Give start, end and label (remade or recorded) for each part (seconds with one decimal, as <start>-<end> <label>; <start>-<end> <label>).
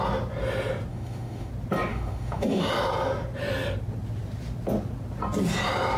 0.0-0.9 recorded; 0.9-1.5 remade; 1.5-1.9 recorded; 1.9-2.6 remade; 2.6-6.0 recorded